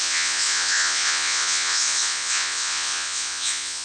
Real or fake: fake